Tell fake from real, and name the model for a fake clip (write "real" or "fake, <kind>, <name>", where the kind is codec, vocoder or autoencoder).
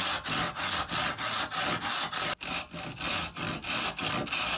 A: real